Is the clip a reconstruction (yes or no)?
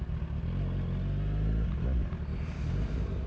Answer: no